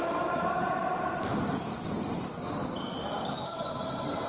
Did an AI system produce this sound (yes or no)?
yes